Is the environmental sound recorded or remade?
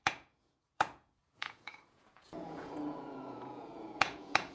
remade